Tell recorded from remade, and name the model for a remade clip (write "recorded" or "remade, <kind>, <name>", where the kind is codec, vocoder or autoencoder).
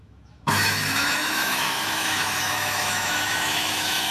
remade, autoencoder, DAC-VAE